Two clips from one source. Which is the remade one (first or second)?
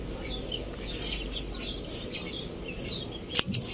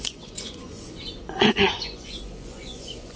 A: second